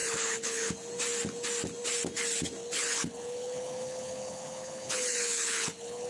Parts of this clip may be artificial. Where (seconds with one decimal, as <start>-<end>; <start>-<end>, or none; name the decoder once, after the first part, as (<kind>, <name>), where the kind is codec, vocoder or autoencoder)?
0.0-0.7 (codec, HILCodec); 2.6-6.1